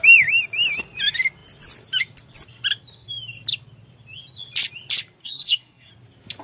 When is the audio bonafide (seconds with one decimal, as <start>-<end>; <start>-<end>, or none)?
0.0-5.2; 5.9-6.4